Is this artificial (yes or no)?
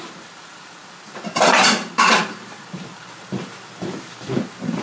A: yes